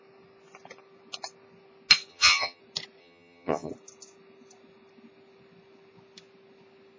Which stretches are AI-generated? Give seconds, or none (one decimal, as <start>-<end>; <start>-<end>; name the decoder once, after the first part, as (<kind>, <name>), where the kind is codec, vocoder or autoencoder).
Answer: 2.1-2.6 (vocoder, HiFi-GAN); 3.0-3.7